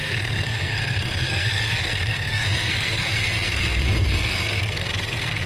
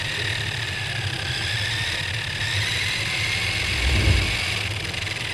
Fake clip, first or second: first